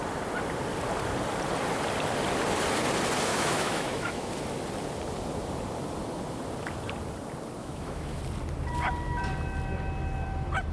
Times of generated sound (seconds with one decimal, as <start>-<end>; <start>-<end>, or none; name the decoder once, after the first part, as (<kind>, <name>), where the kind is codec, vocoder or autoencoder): 3.3-4.3 (autoencoder, DAC-VAE); 7.6-8.2